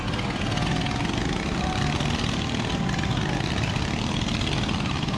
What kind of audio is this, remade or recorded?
recorded